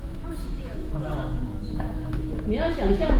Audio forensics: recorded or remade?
remade